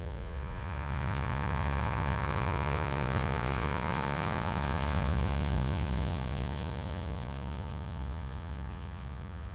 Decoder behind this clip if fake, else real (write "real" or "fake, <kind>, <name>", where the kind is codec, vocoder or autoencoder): fake, vocoder, Vocos